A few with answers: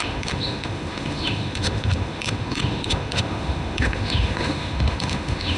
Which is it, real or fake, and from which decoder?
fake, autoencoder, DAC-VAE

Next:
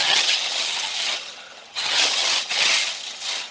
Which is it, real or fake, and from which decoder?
fake, vocoder, HiFi-GAN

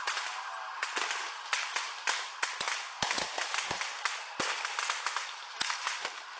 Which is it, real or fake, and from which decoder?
real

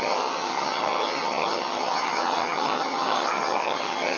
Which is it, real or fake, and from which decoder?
fake, vocoder, HiFi-GAN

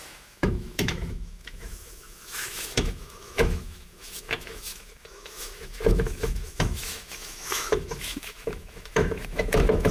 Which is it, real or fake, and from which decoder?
fake, autoencoder, DAC-VAE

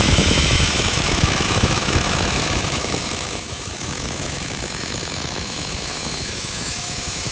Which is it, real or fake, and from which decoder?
fake, autoencoder, DAC-VAE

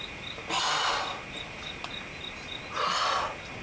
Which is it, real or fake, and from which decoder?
real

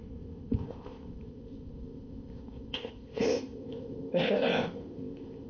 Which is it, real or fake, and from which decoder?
fake, codec, ZipCodec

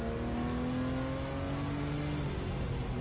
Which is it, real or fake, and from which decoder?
real